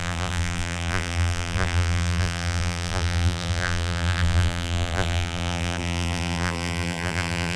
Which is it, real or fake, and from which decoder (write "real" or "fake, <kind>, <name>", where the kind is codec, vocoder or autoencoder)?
fake, vocoder, BigVGAN v2